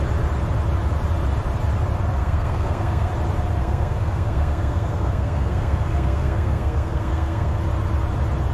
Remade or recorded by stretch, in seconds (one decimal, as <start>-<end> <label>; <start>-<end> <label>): 0.0-2.2 recorded; 2.2-3.1 remade; 3.1-3.6 recorded; 3.6-7.6 remade; 7.6-8.5 recorded